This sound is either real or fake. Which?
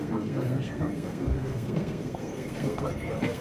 fake